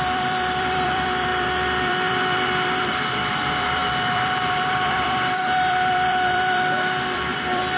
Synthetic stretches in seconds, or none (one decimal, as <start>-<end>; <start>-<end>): 0.0-7.8